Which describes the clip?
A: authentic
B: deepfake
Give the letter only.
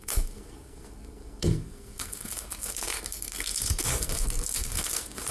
B